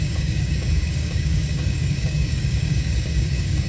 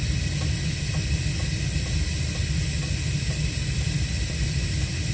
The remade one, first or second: first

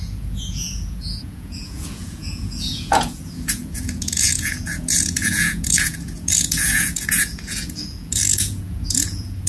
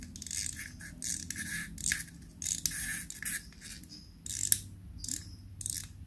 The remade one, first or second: first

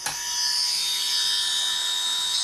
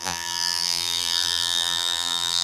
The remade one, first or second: second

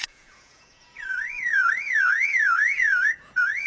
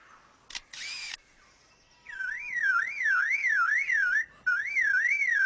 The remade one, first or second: first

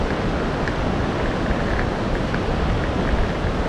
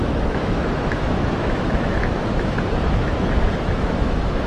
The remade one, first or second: second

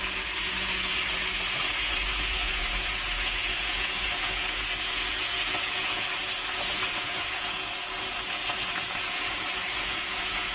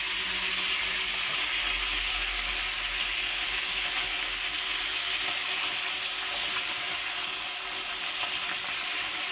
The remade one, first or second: first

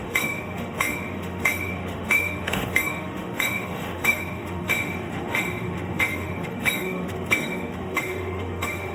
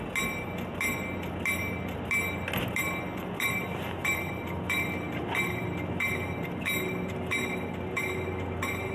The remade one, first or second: first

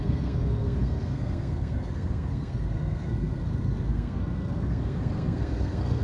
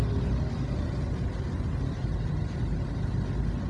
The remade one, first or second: first